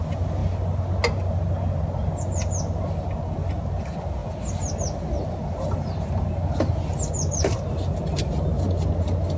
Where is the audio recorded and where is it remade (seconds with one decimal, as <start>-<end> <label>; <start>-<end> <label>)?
0.0-9.4 recorded